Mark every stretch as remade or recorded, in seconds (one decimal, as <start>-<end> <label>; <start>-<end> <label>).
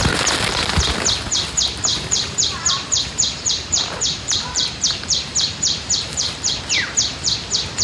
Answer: 0.0-1.9 recorded; 1.9-6.6 remade; 6.6-7.8 recorded